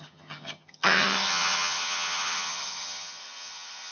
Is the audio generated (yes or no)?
yes